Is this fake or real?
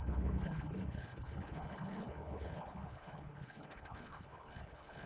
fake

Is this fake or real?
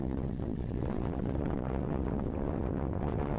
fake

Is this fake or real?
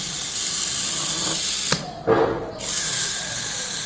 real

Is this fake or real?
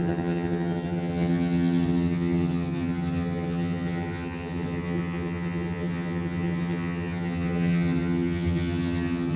fake